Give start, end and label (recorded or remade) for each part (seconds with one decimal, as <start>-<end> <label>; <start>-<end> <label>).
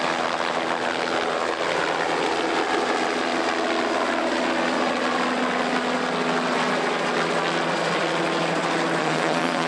0.0-9.0 recorded; 9.0-9.7 remade